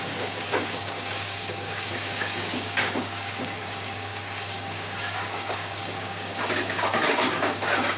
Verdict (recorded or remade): remade